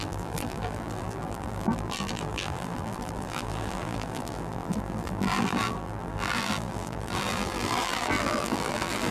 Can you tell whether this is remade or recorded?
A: remade